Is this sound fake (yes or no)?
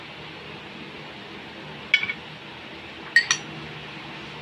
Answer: no